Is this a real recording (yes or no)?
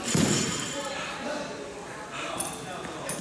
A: yes